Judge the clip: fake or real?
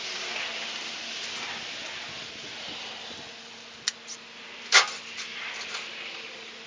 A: real